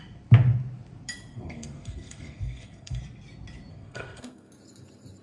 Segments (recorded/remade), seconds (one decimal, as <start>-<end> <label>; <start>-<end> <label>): 0.0-1.3 recorded; 1.3-3.0 remade; 3.0-3.7 recorded; 3.7-4.5 remade; 4.5-5.2 recorded